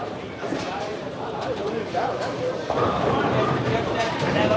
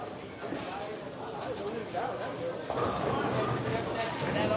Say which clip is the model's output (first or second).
first